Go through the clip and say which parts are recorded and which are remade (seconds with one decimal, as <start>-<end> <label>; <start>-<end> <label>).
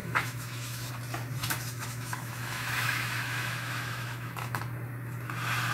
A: 0.0-0.9 remade; 0.9-1.4 recorded; 1.4-4.6 remade; 4.6-5.7 recorded